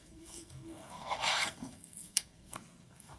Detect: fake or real fake